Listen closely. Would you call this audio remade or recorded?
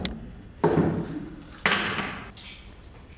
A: recorded